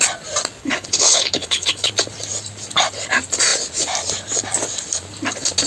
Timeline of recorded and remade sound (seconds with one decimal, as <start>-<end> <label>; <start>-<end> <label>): 0.0-0.6 recorded; 0.6-1.9 remade; 1.9-5.7 recorded